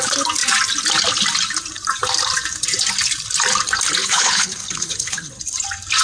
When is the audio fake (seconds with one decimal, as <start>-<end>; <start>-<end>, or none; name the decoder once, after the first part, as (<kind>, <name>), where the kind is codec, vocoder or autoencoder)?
4.0-5.4 (codec, HILCodec)